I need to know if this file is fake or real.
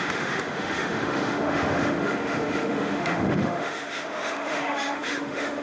fake